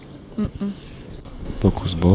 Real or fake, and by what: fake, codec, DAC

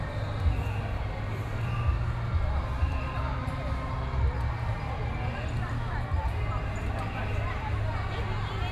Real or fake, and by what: real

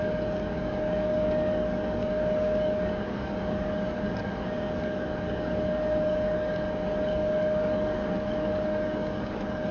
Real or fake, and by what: fake, codec, DAC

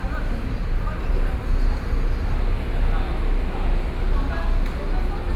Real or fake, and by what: real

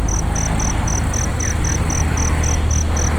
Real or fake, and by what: real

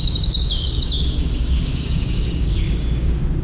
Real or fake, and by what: fake, codec, DAC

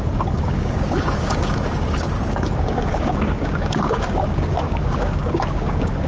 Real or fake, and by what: fake, codec, DAC